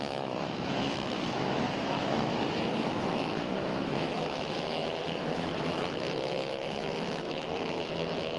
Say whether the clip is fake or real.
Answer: fake